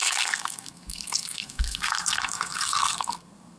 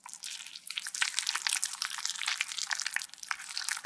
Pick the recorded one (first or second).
second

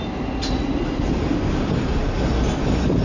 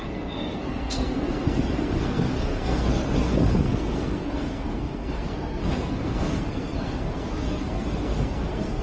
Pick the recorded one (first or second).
first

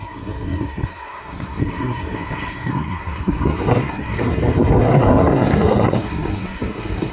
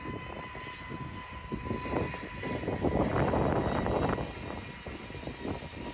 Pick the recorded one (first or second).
second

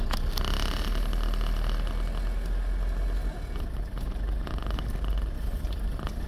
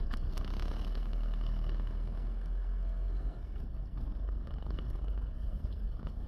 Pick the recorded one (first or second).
first